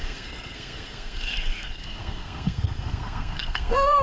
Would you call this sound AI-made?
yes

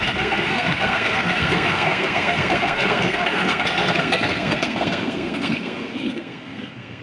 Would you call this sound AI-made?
yes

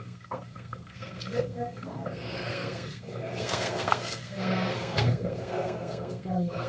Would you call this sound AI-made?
yes